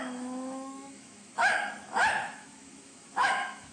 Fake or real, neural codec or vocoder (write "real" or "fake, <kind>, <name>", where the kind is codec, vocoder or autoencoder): fake, autoencoder, DAC-VAE